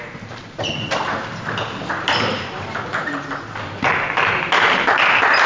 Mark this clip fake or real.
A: real